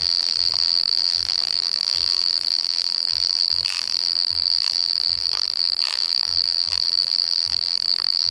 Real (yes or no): no